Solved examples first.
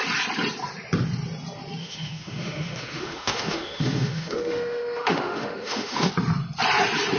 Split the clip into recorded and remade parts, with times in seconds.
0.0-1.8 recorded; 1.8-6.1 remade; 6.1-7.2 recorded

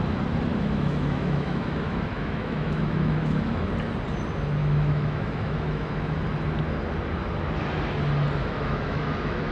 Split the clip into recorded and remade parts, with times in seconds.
0.0-0.5 recorded; 0.5-3.7 remade; 3.7-4.6 recorded; 4.6-6.2 remade; 6.2-8.4 recorded; 8.4-9.5 remade

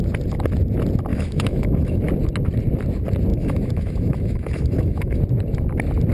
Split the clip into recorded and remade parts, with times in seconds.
0.0-1.1 recorded; 1.1-2.0 remade; 2.0-3.3 recorded; 3.3-5.2 remade; 5.2-6.1 recorded